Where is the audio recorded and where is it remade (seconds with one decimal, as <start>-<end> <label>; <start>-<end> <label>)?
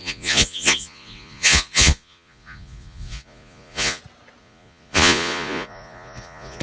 0.0-4.0 remade; 4.0-4.4 recorded; 4.4-6.6 remade